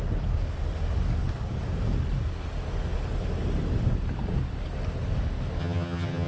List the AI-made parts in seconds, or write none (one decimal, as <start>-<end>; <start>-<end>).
5.6-6.3